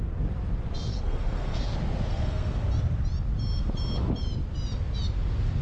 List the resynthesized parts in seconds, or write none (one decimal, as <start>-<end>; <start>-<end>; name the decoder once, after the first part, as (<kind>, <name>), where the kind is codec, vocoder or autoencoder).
0.9-1.6 (codec, SNAC); 2.1-2.6